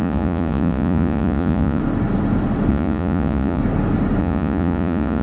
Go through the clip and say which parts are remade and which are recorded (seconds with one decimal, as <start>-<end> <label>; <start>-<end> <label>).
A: 0.0-1.8 remade; 1.8-2.7 recorded; 2.7-3.6 remade; 3.6-4.2 recorded; 4.2-5.2 remade